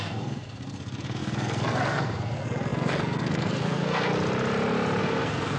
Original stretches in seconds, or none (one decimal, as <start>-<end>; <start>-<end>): 4.1-5.0